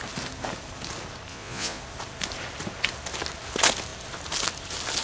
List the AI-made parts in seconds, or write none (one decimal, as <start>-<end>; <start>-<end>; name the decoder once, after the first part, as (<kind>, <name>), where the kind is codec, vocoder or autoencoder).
1.3-1.8 (vocoder, Vocos)

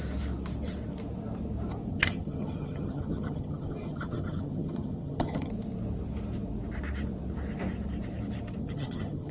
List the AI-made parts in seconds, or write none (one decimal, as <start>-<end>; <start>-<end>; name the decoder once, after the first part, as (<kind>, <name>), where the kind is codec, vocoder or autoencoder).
1.9-5.5 (vocoder, HiFi-GAN); 8.6-9.3

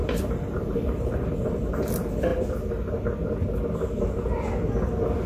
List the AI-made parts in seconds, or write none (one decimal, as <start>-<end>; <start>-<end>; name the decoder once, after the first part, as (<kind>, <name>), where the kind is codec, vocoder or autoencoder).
0.0-1.7 (vocoder, BigVGAN v2)

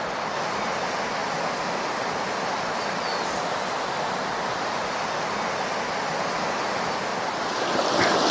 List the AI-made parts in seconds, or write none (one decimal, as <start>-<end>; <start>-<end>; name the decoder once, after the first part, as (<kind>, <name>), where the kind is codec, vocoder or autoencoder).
none

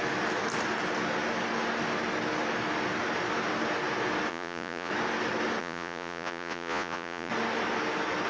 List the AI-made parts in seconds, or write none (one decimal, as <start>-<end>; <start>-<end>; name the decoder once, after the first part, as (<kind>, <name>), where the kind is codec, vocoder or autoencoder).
4.3-4.9 (vocoder, Vocos); 5.6-7.3

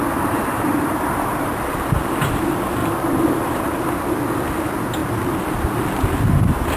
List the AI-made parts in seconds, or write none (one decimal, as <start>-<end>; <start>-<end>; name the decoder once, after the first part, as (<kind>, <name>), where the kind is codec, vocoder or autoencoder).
0.5-1.9 (vocoder, BigVGAN v2); 2.8-3.8; 5.0-5.9